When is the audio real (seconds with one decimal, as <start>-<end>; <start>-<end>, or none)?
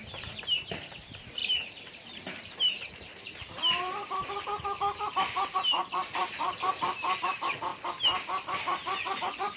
7.7-9.2